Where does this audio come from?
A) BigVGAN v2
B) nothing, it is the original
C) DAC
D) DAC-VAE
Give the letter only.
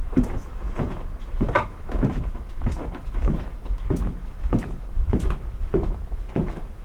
D